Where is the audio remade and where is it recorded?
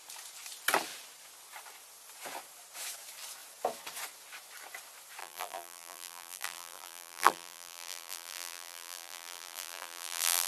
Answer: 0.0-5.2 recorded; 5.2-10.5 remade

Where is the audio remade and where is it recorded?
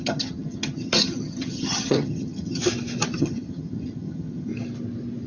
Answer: 0.0-2.6 remade; 2.6-3.2 recorded; 3.2-4.5 remade; 4.5-5.3 recorded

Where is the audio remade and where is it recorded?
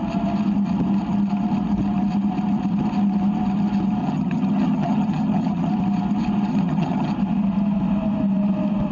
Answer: 0.0-4.0 recorded; 4.0-5.7 remade; 5.7-6.5 recorded; 6.5-7.1 remade; 7.1-8.9 recorded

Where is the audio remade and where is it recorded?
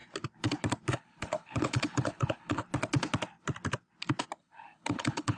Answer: 0.0-0.9 recorded; 0.9-2.6 remade; 2.6-4.4 recorded; 4.4-5.4 remade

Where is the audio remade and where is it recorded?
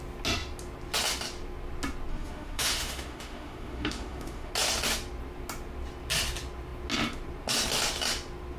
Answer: 0.0-2.1 recorded; 2.1-4.5 remade; 4.5-8.6 recorded